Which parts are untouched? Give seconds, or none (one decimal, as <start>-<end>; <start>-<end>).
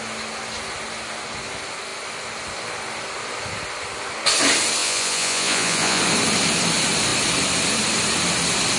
0.0-4.8; 6.0-8.8